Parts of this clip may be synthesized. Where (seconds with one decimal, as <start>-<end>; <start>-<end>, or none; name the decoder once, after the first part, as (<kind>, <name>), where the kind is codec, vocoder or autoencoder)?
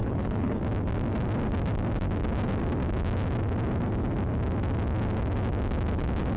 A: 0.0-0.6 (codec, HILCodec)